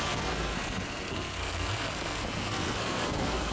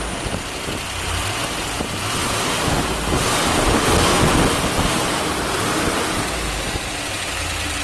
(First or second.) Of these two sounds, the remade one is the first